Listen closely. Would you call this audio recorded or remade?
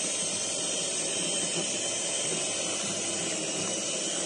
recorded